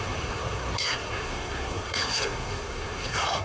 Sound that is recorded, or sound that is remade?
remade